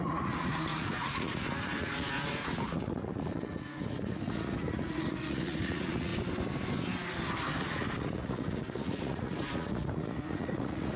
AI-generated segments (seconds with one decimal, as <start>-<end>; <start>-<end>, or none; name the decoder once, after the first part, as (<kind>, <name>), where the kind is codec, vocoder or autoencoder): 0.0-6.1 (vocoder, Vocos); 7.6-11.0